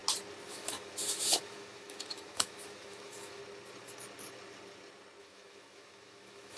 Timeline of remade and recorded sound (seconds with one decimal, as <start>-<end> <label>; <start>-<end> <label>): 0.0-0.5 recorded; 0.5-3.4 remade; 3.4-5.2 recorded; 5.2-6.6 remade